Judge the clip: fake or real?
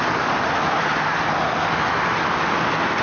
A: real